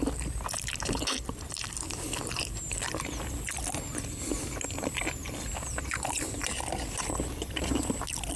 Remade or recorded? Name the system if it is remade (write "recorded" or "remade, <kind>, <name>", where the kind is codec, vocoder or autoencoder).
recorded